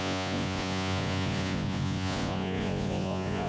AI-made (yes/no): yes